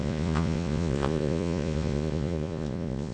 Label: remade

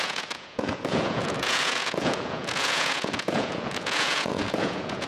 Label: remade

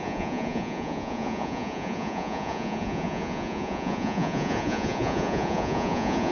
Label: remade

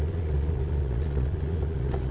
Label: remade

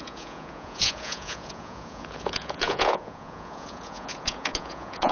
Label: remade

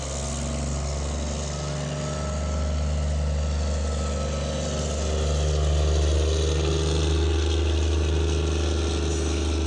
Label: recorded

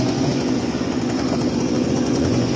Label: remade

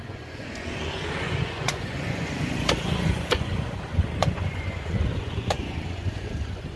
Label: remade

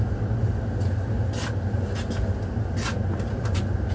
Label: recorded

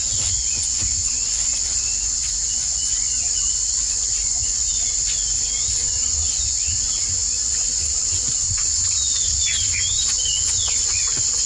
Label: remade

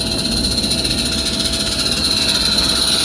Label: recorded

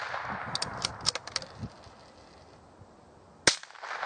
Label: recorded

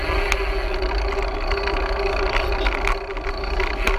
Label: recorded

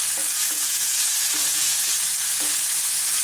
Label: remade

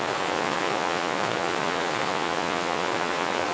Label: remade